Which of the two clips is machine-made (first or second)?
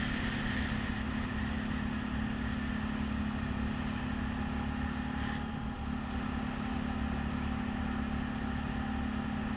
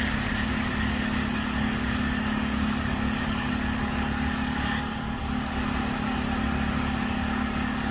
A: second